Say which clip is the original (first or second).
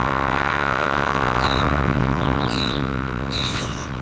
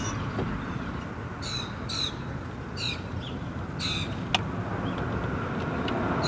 second